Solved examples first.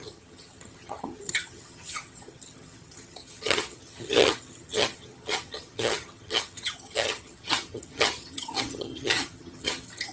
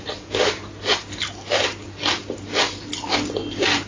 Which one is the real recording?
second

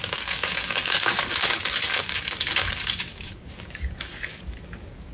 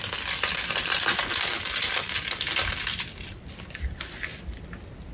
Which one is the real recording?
second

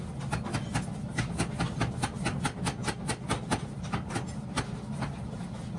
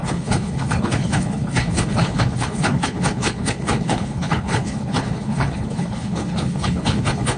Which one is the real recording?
first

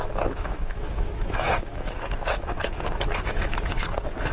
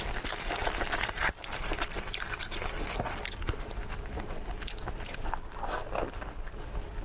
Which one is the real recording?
second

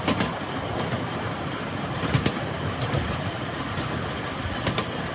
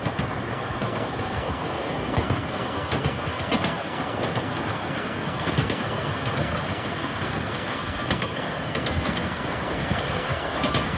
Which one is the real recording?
first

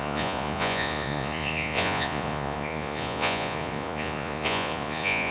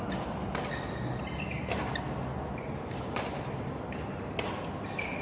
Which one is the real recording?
second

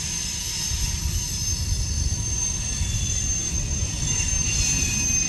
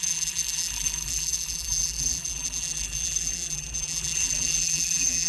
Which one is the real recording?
first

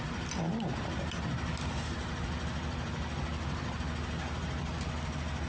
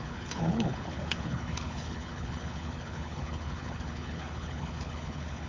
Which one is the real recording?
first